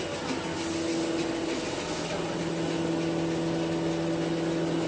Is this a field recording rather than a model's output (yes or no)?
yes